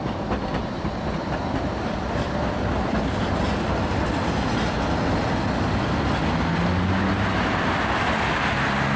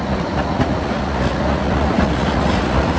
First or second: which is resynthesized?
second